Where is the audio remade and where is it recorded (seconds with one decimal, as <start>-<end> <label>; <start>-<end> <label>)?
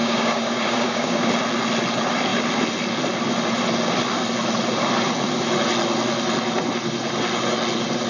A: 0.0-1.3 remade; 1.3-8.1 recorded